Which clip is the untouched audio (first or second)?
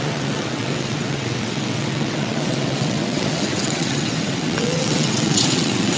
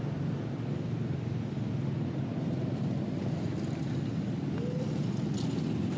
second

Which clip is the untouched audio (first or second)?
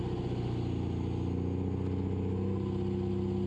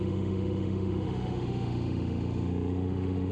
first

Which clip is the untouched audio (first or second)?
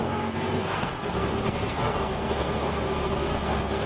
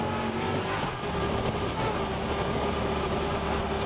second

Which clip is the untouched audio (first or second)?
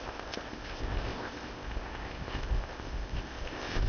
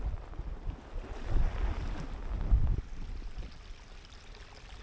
second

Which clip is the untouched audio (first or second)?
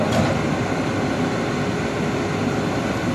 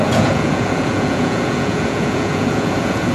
first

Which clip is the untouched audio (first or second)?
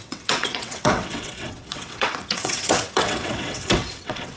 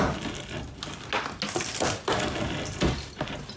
second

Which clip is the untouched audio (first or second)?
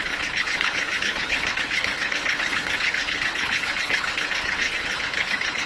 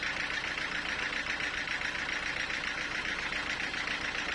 second